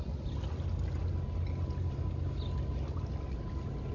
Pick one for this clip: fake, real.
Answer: real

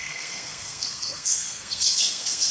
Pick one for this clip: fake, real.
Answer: fake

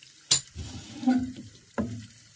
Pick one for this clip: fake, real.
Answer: real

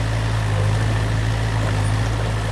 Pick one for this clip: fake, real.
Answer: real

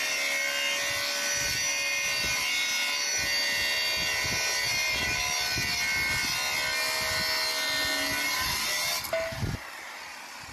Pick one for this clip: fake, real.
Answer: real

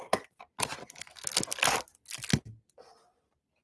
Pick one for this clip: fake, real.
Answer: real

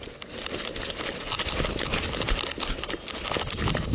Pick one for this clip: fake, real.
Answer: real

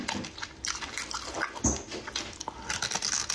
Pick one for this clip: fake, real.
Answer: real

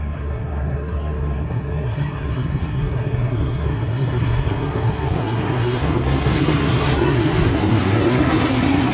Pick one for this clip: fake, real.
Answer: fake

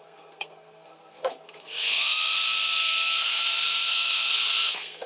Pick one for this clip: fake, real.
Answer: fake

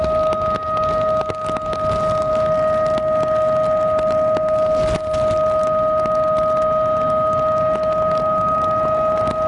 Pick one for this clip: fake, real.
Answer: real